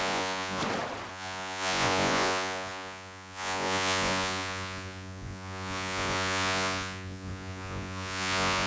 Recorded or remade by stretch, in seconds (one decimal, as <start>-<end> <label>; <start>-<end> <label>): 0.0-0.6 remade; 0.6-1.1 recorded; 1.1-8.7 remade